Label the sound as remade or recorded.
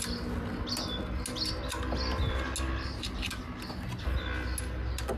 recorded